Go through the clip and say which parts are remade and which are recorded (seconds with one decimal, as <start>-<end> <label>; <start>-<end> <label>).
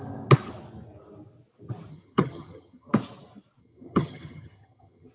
0.0-1.9 recorded; 1.9-2.9 remade; 2.9-3.6 recorded; 3.6-5.1 remade